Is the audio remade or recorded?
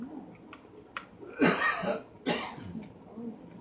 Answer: recorded